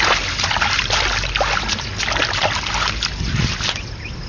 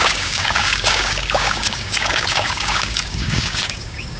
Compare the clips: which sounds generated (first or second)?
second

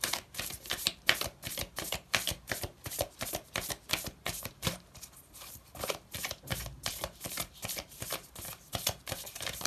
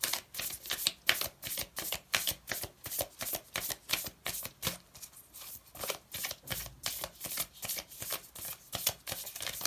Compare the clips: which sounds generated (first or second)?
first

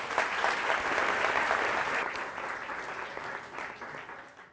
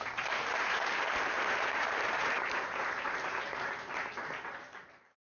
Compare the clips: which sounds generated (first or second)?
second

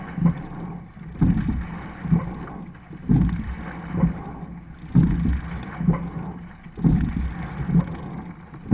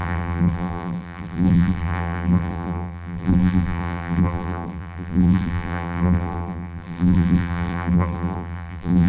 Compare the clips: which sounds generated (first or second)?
second